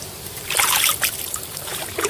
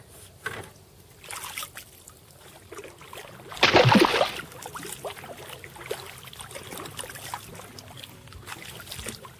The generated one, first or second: first